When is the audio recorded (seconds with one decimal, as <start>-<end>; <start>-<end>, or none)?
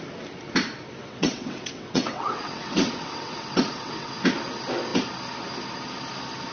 0.0-1.0; 4.1-6.5